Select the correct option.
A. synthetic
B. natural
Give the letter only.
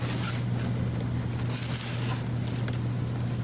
B